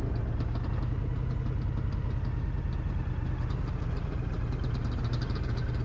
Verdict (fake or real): real